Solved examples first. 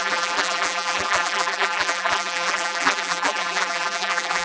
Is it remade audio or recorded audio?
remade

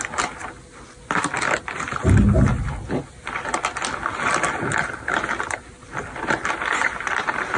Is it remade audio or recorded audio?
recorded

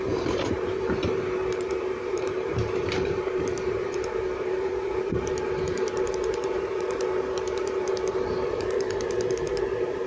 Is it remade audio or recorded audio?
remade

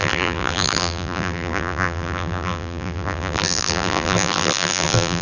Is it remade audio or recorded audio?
remade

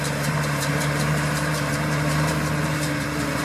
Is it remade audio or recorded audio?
remade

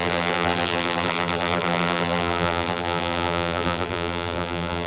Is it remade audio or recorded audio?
remade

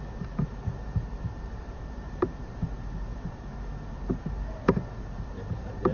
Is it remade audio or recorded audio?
remade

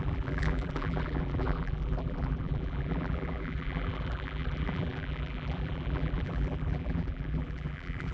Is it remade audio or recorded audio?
remade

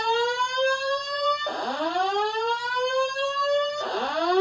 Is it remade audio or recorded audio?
remade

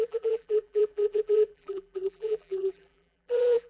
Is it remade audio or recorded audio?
remade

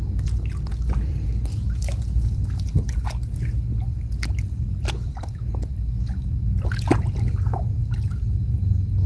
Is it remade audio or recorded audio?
recorded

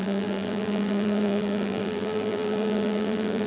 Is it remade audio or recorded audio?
remade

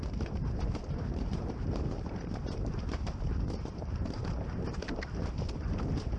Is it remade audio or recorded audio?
remade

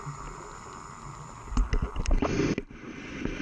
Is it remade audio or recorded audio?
recorded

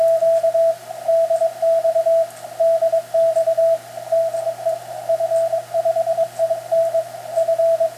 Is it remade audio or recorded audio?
recorded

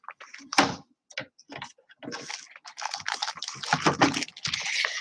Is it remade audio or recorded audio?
recorded